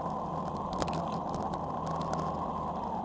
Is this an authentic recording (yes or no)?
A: yes